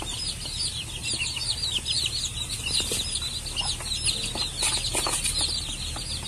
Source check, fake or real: real